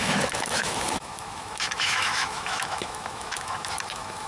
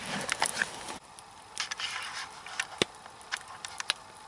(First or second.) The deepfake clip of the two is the first